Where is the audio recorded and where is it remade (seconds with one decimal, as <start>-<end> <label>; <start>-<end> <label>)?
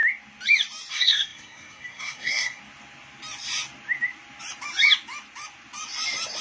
0.0-0.9 recorded; 0.9-2.6 remade; 2.6-6.4 recorded